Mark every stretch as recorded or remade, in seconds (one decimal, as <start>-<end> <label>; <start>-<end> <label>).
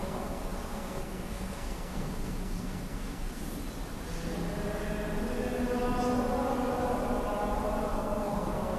0.0-3.4 remade; 3.4-7.9 recorded; 7.9-8.8 remade